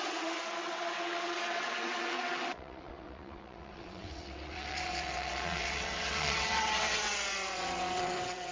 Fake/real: fake